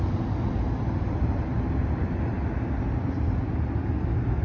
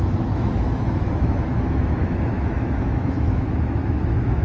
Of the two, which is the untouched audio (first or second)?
first